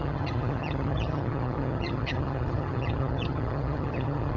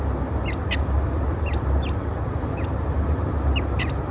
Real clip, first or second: second